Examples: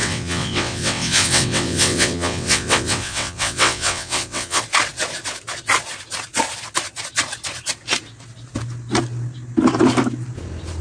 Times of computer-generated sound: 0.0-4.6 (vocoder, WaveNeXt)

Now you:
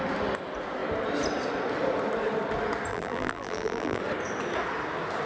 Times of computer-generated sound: 2.9-4.0 (vocoder, BigVGAN v2)

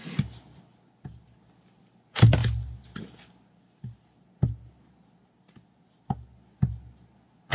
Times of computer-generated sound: none